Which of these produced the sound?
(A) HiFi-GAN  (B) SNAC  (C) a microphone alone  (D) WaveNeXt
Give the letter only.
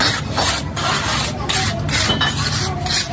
C